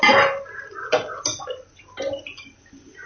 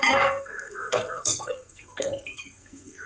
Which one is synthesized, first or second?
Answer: second